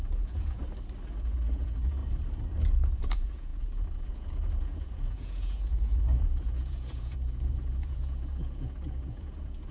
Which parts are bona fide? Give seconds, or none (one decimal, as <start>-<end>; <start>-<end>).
0.6-1.2; 2.0-3.0